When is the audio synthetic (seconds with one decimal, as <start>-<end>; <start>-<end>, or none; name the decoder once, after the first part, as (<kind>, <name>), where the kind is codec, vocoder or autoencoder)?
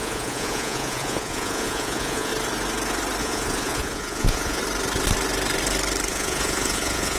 0.0-2.3 (vocoder, Vocos); 3.2-4.6; 6.1-7.2